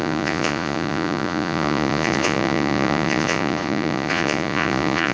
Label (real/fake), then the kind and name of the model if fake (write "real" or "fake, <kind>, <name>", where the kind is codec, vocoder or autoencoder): fake, vocoder, Vocos